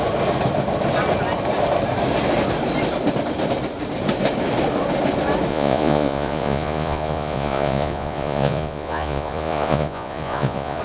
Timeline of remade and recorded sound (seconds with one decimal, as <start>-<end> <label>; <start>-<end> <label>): 0.0-5.5 recorded; 5.5-10.8 remade